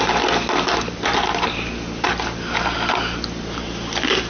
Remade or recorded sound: recorded